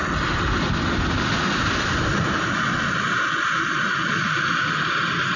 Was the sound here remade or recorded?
recorded